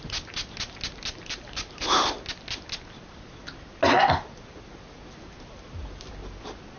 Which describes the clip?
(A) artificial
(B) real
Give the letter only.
B